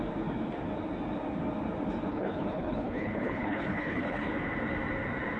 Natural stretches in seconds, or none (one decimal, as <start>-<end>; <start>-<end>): 0.0-2.1; 4.3-5.4